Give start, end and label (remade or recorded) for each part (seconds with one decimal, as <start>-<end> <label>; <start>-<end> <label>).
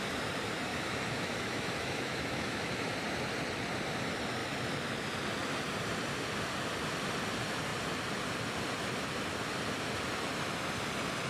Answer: 0.0-0.7 recorded; 0.7-2.9 remade; 2.9-11.3 recorded